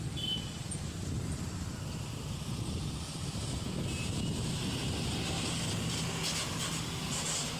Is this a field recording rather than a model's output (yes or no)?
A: yes